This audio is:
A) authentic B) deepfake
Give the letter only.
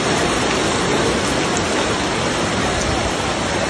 A